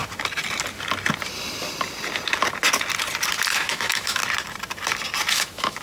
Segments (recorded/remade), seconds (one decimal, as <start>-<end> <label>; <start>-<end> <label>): 0.0-3.5 recorded; 3.5-4.2 remade; 4.2-5.3 recorded; 5.3-5.8 remade